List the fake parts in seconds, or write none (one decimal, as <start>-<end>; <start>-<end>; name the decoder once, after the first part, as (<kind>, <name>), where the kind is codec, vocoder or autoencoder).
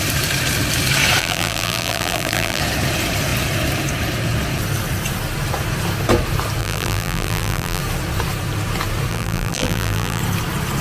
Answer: 1.2-2.6 (vocoder, BigVGAN v2); 6.6-7.8; 9.1-10.2